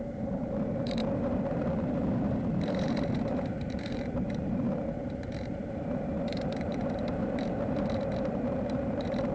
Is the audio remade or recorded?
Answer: remade